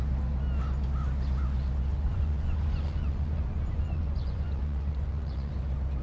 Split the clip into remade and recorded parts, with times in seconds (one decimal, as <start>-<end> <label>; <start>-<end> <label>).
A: 0.0-1.9 recorded; 1.9-5.5 remade; 5.5-6.0 recorded